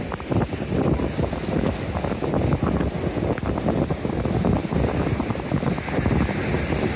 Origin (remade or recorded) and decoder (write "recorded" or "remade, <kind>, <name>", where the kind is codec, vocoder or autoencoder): recorded